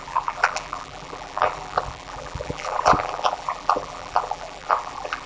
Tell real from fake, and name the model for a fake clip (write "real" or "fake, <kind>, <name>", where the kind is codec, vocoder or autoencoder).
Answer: fake, vocoder, BigVGAN v2